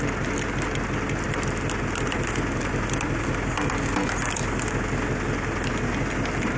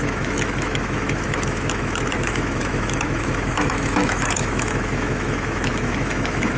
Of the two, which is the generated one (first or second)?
second